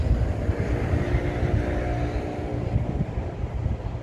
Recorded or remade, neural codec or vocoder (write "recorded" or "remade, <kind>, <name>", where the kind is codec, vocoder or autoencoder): recorded